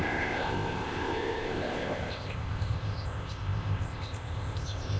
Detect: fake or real fake